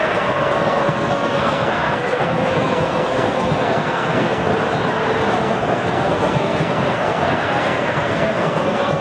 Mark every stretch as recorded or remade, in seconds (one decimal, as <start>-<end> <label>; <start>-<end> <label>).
0.0-4.5 remade; 4.5-5.4 recorded; 5.4-9.0 remade